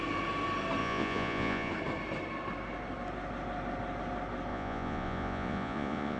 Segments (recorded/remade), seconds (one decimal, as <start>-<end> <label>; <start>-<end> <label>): 0.0-0.8 recorded; 0.8-1.7 remade; 1.7-4.5 recorded; 4.5-6.2 remade